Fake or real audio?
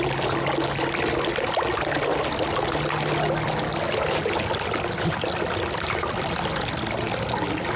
real